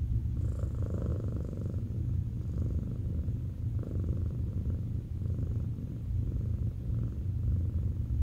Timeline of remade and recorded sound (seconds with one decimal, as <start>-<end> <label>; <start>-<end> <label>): 0.0-1.1 recorded; 1.1-2.3 remade; 2.3-3.0 recorded; 3.0-4.6 remade; 4.6-6.5 recorded; 6.5-7.3 remade; 7.3-8.2 recorded